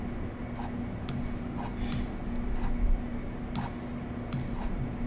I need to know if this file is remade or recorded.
recorded